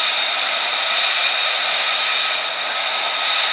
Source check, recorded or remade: recorded